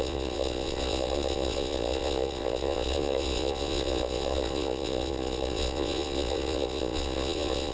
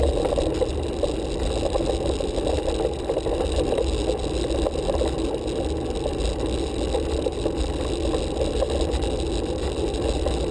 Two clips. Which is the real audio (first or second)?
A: second